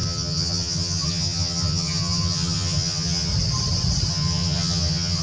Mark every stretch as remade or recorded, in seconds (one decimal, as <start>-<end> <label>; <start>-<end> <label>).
0.0-3.3 remade; 3.3-4.1 recorded; 4.1-5.2 remade